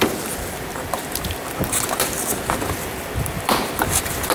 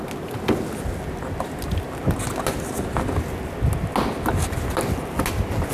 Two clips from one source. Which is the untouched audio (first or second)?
second